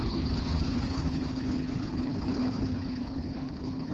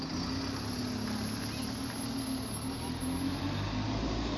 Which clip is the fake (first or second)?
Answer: first